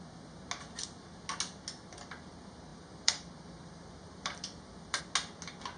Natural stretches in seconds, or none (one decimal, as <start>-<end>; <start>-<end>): 0.0-2.7; 5.0-5.8